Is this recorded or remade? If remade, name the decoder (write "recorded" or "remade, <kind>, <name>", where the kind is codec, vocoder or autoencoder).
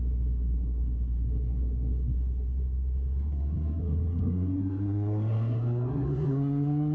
remade, codec, SNAC